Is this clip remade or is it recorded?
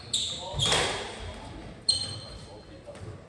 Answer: recorded